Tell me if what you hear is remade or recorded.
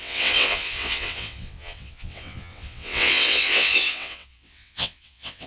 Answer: remade